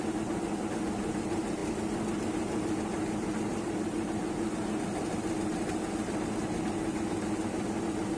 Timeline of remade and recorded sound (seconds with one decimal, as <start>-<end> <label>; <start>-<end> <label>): 0.0-8.2 recorded